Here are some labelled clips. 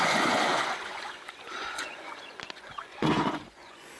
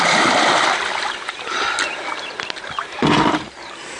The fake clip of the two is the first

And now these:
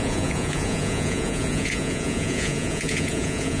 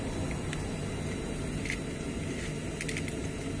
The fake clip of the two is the first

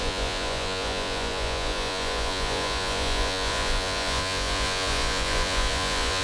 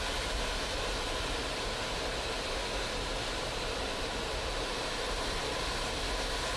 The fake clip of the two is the first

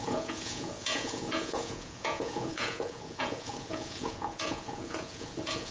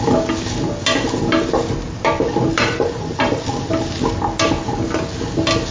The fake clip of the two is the first